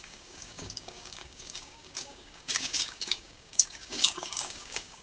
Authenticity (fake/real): fake